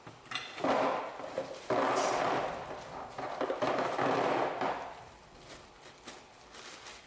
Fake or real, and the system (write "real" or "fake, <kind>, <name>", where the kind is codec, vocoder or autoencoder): real